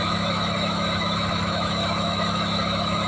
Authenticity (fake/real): fake